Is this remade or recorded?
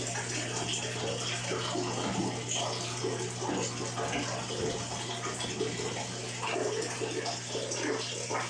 recorded